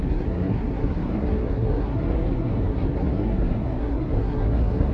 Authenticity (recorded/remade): remade